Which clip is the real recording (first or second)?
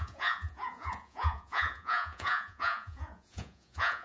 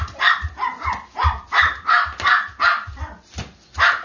second